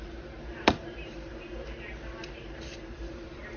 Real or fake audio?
fake